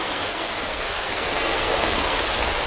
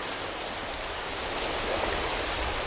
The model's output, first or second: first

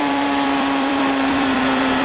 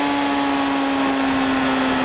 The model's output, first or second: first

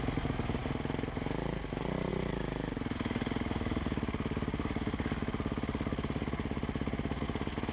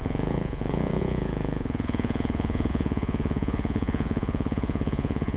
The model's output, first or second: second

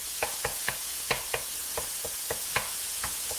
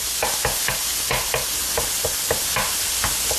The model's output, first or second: first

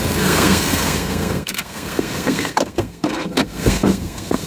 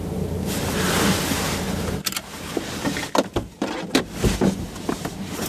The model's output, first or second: first